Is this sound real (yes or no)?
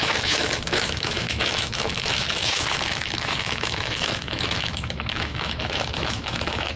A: no